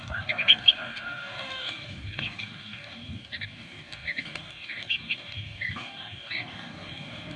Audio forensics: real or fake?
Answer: fake